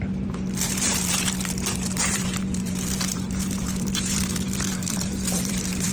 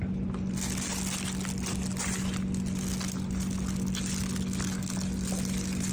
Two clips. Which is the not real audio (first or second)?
first